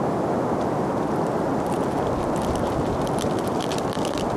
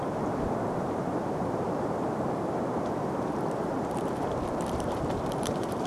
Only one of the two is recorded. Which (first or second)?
first